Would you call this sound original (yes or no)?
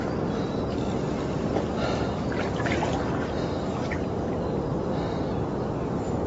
yes